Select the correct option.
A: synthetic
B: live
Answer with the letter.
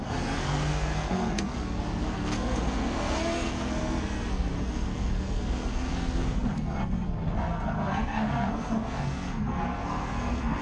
A